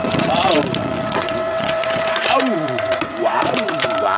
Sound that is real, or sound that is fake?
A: fake